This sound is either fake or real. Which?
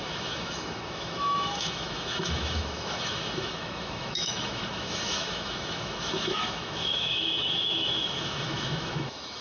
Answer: fake